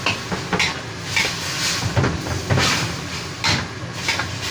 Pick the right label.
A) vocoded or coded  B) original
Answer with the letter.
B